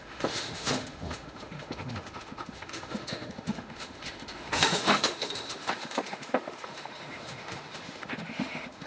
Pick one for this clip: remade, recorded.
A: remade